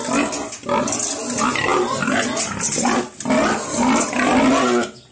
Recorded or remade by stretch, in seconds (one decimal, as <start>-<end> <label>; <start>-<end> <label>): 0.0-5.1 recorded